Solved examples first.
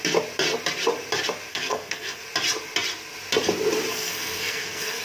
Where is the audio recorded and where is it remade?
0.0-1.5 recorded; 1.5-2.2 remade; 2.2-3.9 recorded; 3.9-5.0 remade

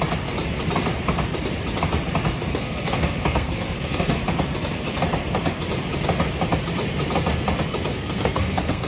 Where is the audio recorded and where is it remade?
0.0-2.5 recorded; 2.5-4.2 remade; 4.2-7.9 recorded; 7.9-8.9 remade